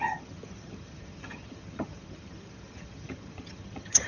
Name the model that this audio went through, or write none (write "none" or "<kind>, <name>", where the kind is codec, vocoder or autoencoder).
vocoder, HiFi-GAN